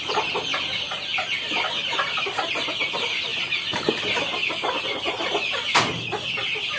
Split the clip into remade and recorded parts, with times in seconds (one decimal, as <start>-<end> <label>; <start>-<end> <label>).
0.0-6.8 recorded

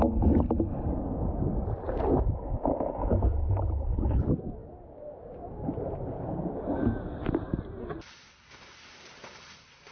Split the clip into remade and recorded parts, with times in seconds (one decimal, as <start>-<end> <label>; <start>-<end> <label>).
0.0-9.9 recorded

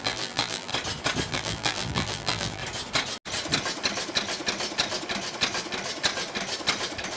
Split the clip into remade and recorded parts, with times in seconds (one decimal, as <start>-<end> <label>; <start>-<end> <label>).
0.0-0.7 remade; 0.7-1.3 recorded; 1.3-2.6 remade; 2.6-7.2 recorded

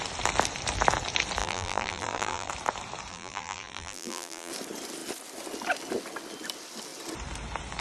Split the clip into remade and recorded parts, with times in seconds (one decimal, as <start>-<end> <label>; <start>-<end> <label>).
0.0-1.4 recorded; 1.4-2.5 remade; 2.5-3.1 recorded; 3.1-4.5 remade; 4.5-7.8 recorded

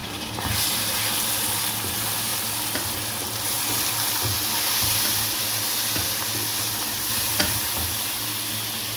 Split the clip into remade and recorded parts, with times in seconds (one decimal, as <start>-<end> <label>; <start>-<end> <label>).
0.0-0.8 remade; 0.8-9.0 recorded

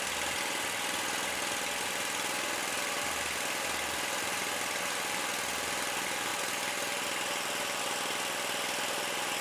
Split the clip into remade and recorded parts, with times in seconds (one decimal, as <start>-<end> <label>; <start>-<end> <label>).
0.0-9.4 recorded

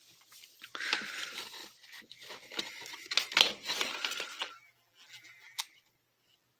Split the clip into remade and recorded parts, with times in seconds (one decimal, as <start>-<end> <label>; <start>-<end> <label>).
0.0-4.4 recorded; 4.4-5.6 remade; 5.6-6.6 recorded

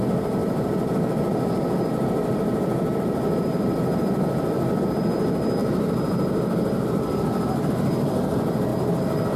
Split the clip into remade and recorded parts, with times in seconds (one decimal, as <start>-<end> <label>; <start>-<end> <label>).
0.0-0.4 recorded; 0.4-4.9 remade; 4.9-5.6 recorded; 5.6-7.7 remade; 7.7-8.7 recorded; 8.7-9.4 remade